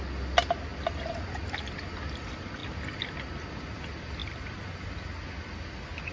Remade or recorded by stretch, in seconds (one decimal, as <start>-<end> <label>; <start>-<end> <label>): 0.0-6.1 recorded